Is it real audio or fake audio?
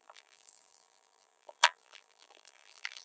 fake